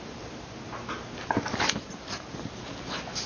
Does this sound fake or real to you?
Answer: real